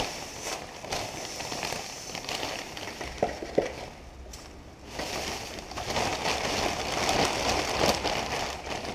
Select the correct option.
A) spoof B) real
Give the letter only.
B